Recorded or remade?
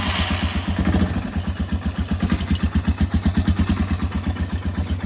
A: recorded